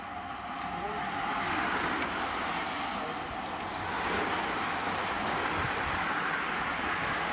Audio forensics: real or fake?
real